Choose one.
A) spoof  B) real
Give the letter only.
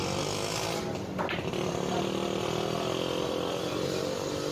B